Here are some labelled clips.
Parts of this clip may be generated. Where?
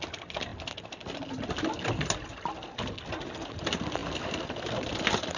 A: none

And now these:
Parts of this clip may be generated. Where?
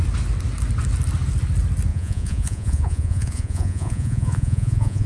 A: 1.9-5.1 (vocoder, Vocos)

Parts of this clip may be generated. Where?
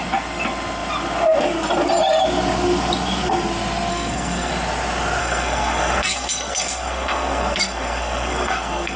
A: 3.9-4.5 (codec, SNAC); 5.2-9.0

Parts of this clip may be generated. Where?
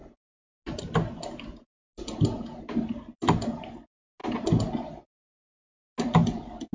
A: none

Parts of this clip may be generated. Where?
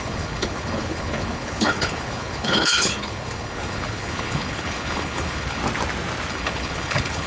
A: 0.0-5.6 (codec, HILCodec); 6.3-7.3